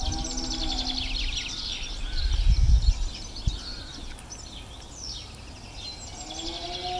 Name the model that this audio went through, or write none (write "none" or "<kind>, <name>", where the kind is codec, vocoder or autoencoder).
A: none